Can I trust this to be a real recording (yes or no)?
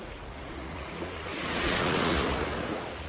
no